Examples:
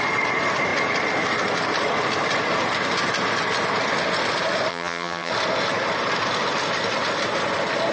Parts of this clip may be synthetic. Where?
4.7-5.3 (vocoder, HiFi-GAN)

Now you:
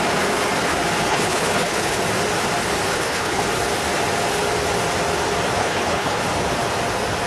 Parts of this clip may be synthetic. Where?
1.1-2.0 (codec, HILCodec); 2.9-3.4; 5.6-6.2

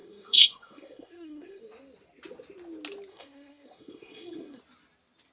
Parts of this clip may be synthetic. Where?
0.0-1.6 (codec, SNAC); 3.1-4.6

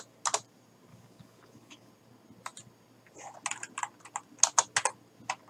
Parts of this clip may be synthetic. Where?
0.9-1.9 (codec, DAC)